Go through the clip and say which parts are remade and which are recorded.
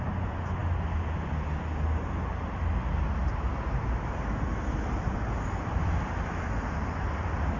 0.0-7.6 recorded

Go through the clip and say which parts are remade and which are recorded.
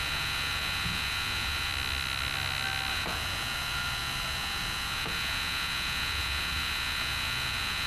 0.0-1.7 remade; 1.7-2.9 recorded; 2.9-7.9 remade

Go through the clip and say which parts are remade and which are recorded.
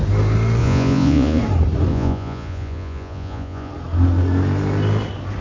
0.0-0.6 recorded; 0.6-1.4 remade; 1.4-1.9 recorded; 1.9-3.7 remade; 3.7-5.4 recorded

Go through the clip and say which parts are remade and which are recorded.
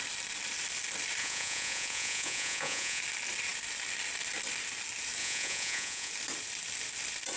0.0-1.2 recorded; 1.2-3.0 remade; 3.0-5.2 recorded; 5.2-6.1 remade; 6.1-7.4 recorded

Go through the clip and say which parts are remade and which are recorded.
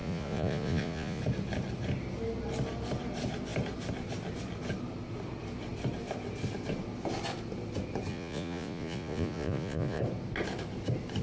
0.0-1.2 remade; 1.2-8.1 recorded; 8.1-10.0 remade; 10.0-11.2 recorded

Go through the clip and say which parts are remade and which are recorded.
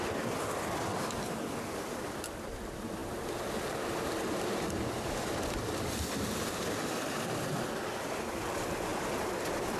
0.0-9.8 recorded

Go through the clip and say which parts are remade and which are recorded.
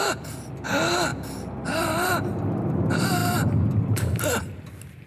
0.0-5.1 recorded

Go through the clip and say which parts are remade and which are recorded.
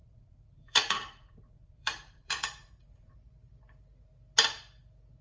0.0-3.1 remade; 3.1-5.2 recorded